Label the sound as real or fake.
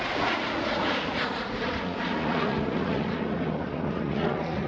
fake